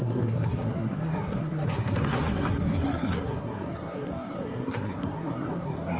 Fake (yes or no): yes